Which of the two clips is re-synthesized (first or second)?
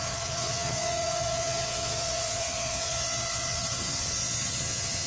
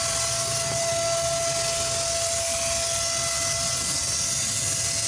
first